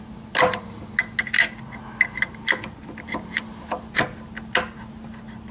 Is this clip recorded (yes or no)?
yes